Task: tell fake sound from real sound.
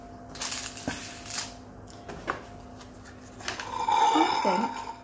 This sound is real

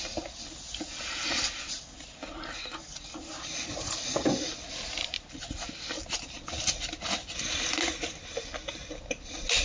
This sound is real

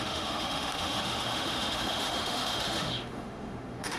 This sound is fake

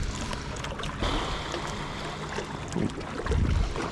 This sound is real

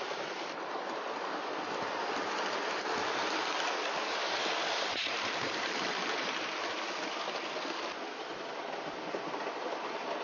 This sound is fake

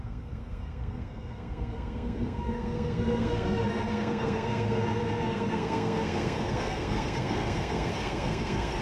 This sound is fake